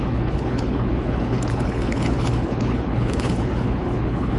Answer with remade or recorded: remade